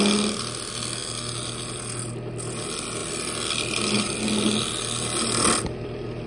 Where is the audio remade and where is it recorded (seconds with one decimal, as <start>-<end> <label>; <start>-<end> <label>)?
0.0-6.3 recorded